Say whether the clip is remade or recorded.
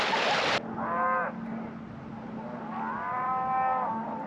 recorded